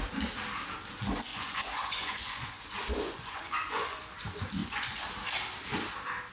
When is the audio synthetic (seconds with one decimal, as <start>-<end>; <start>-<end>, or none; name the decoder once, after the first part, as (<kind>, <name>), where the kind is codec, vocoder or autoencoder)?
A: 1.3-4.0 (vocoder, Vocos); 4.6-5.1